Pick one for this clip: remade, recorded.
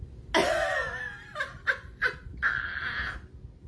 recorded